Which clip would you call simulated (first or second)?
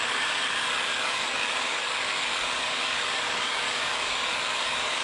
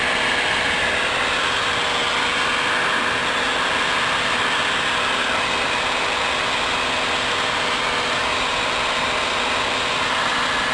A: first